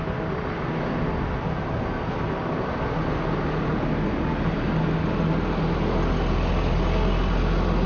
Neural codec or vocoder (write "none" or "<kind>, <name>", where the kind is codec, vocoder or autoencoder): none